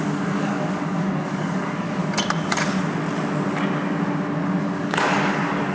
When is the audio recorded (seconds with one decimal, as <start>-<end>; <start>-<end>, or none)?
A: 2.0-4.6

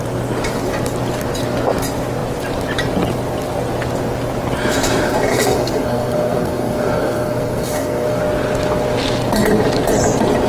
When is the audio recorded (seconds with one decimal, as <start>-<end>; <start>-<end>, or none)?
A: 0.0-5.3; 8.2-10.5

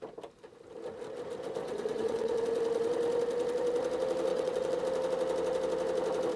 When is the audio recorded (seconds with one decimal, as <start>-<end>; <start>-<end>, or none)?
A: 0.0-1.6; 2.4-4.3; 4.8-6.4

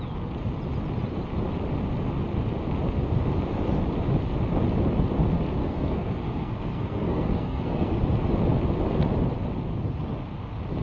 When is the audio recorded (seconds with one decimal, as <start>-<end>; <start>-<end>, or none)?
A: 0.0-5.6; 8.0-10.8

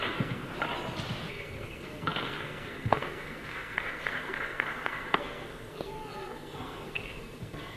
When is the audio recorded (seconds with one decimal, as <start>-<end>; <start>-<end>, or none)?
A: 0.5-1.3

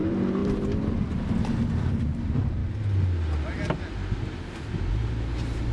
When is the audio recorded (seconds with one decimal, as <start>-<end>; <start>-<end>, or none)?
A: 2.6-4.9

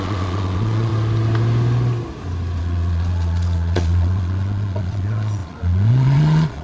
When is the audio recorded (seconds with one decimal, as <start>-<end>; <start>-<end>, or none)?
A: 0.9-2.6

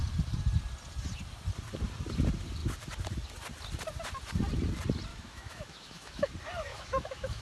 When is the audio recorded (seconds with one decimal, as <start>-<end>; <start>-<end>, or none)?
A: 0.0-5.1; 6.3-6.7